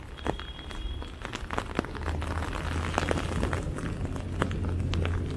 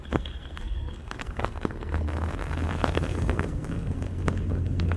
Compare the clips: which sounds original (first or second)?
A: first